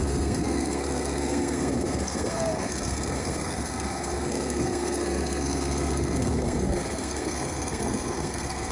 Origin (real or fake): fake